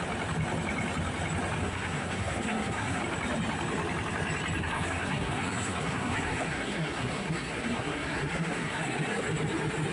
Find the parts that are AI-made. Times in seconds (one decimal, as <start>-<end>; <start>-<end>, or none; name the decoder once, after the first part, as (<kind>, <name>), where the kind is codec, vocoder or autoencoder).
1.6-3.0 (codec, SNAC); 4.6-9.2